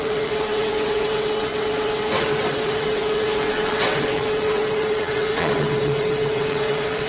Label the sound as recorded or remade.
remade